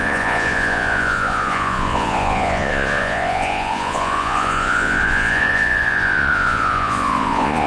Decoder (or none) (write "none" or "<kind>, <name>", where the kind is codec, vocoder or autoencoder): vocoder, Vocos